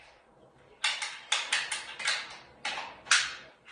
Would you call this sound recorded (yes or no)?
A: yes